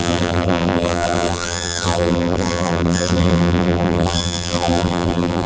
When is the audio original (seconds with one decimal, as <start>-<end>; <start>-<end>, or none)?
none